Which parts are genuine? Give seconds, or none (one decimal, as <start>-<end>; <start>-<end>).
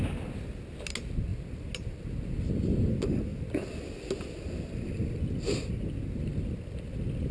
0.0-7.3